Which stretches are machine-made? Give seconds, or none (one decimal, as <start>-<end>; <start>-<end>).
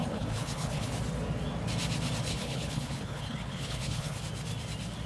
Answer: 0.0-0.9; 2.3-4.2